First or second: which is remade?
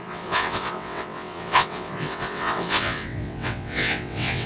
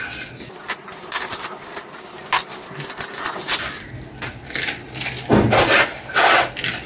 first